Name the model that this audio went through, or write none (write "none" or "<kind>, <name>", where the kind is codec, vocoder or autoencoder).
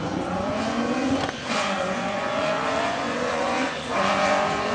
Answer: vocoder, Vocos